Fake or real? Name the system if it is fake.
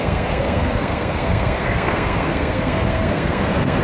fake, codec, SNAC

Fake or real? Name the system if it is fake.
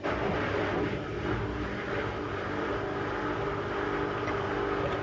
real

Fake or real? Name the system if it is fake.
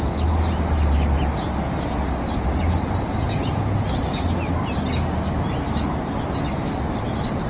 real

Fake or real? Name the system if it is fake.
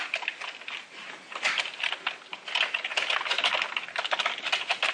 real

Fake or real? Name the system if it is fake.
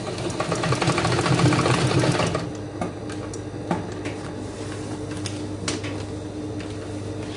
real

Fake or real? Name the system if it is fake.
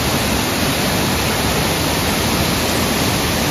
real